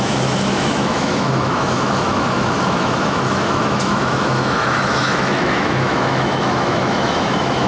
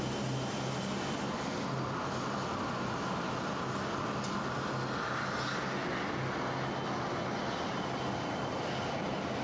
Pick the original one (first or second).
second